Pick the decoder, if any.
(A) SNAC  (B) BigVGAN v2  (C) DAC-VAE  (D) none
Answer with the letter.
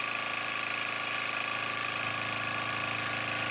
D